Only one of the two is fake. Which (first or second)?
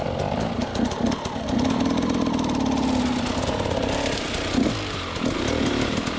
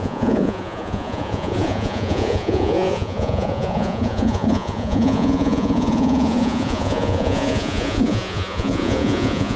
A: second